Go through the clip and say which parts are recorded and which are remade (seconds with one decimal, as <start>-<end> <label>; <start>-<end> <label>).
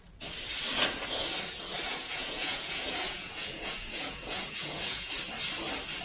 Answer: 0.0-1.9 recorded; 1.9-5.1 remade; 5.1-6.0 recorded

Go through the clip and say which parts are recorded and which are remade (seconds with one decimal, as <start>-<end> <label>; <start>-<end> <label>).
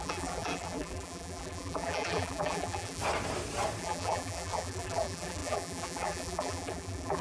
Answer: 0.0-3.0 remade; 3.0-3.8 recorded; 3.8-7.2 remade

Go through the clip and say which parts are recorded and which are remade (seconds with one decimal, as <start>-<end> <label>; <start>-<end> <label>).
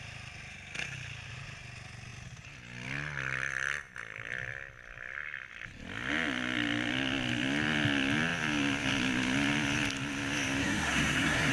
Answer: 0.0-10.6 recorded; 10.6-11.5 remade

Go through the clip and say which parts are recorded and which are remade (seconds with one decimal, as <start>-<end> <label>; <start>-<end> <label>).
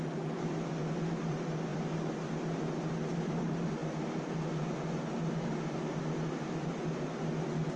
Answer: 0.0-7.8 recorded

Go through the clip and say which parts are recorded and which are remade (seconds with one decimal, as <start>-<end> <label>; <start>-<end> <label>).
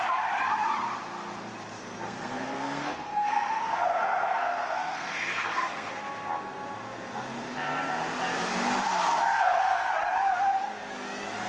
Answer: 0.0-1.8 recorded; 1.8-5.9 remade; 5.9-9.2 recorded; 9.2-9.9 remade; 9.9-11.5 recorded